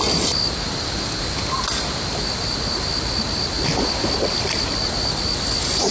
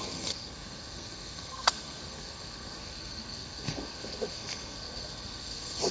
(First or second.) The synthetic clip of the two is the second